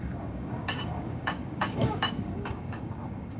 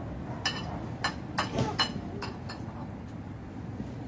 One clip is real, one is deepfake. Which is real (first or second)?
second